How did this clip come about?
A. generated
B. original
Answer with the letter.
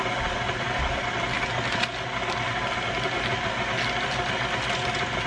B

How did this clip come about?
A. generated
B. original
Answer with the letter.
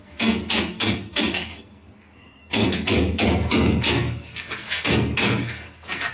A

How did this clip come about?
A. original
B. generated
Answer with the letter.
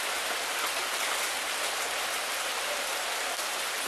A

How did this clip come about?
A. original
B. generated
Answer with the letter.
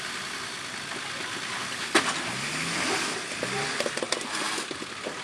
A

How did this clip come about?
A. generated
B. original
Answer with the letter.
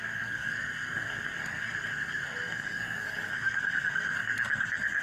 A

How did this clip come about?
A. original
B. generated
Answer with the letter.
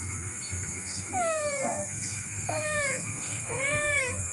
B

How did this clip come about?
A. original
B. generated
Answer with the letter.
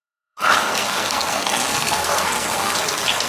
B